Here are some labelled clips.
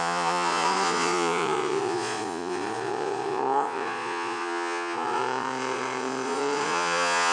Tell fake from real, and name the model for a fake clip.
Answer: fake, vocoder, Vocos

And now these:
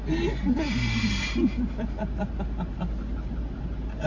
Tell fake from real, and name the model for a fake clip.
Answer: real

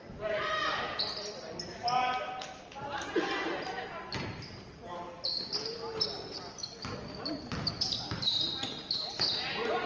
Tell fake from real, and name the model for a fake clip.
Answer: real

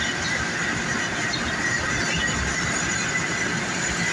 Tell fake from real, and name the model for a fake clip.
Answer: real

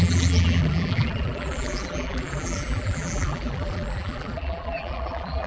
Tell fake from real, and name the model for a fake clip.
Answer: fake, vocoder, BigVGAN v2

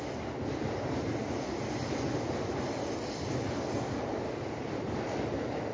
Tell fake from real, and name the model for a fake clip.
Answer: real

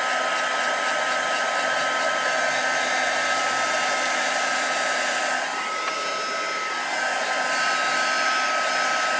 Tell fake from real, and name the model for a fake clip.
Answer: real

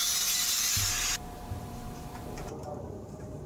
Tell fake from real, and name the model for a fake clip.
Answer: fake, vocoder, BigVGAN v2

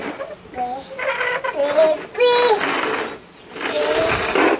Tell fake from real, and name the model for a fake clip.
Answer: real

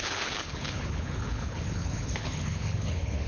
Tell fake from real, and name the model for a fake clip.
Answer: fake, codec, HILCodec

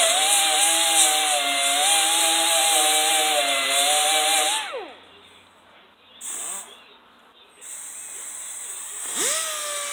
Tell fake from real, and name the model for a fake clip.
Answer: real